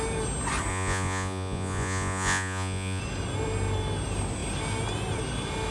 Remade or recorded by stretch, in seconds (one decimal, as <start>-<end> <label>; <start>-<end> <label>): 0.0-0.7 recorded; 0.7-3.0 remade; 3.0-5.7 recorded